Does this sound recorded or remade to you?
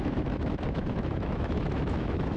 remade